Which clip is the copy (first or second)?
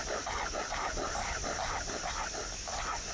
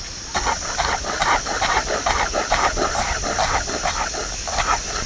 second